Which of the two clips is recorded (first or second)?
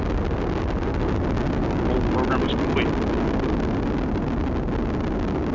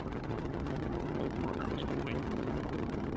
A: first